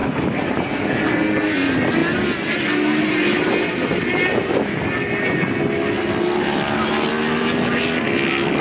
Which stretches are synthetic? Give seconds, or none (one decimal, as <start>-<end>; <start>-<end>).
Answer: 0.0-0.7

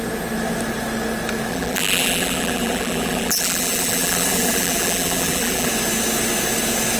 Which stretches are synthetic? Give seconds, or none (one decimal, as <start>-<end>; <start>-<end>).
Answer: 1.5-5.7

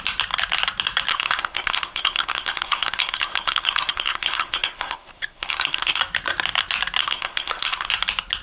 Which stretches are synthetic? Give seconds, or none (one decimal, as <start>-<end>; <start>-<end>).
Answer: 1.1-6.0; 7.0-7.9

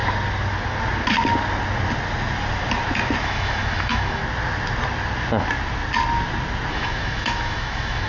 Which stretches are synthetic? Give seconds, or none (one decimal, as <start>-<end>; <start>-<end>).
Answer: 3.2-4.2; 6.7-8.1

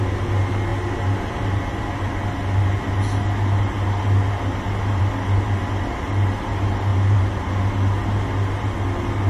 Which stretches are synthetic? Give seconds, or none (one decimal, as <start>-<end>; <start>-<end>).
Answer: 6.9-7.5

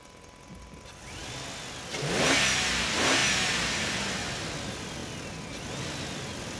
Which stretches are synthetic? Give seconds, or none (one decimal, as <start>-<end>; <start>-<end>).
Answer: none